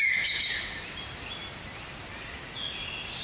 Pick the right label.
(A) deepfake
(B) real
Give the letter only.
B